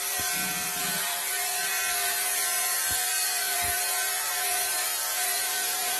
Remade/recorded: remade